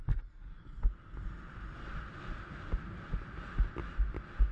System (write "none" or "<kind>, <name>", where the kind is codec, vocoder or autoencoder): none